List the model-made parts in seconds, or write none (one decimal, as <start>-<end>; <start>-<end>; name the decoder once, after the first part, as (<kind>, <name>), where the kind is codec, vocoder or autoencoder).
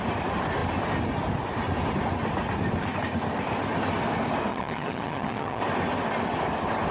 4.5-5.6 (vocoder, HiFi-GAN)